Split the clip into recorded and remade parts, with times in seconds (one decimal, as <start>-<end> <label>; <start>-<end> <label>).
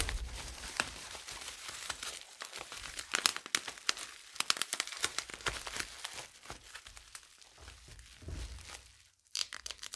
0.0-3.3 remade; 3.3-4.6 recorded; 4.6-5.3 remade; 5.3-9.1 recorded; 9.1-10.0 remade